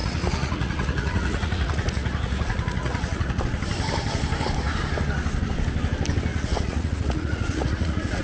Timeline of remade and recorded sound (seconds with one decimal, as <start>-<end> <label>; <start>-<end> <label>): 0.0-3.4 remade; 3.4-6.3 recorded; 6.3-8.2 remade